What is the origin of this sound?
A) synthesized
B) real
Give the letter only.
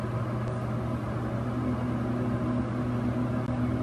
B